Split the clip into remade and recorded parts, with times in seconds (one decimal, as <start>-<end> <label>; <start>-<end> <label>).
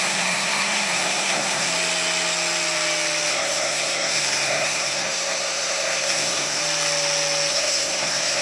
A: 0.0-1.7 remade; 1.7-3.3 recorded; 3.3-6.6 remade; 6.6-7.5 recorded; 7.5-8.4 remade